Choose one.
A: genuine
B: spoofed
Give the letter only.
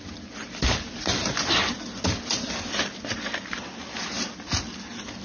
A